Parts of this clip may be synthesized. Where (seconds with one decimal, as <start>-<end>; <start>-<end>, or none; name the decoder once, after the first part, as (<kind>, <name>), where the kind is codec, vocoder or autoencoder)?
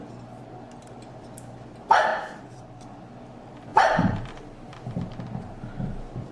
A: 2.1-2.8 (vocoder, BigVGAN v2); 3.7-5.1